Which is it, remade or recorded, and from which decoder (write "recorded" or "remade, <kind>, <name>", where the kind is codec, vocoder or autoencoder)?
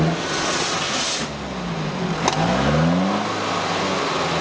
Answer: recorded